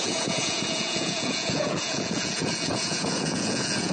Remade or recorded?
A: remade